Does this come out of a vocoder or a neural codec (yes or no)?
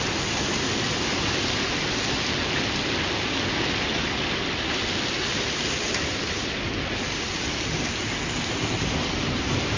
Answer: no